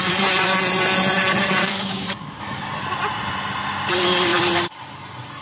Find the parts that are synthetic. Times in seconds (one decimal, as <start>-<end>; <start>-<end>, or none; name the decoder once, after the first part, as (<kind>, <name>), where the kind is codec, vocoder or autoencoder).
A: 1.6-2.4 (codec, DAC)